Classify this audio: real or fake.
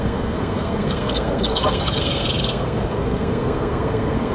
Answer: fake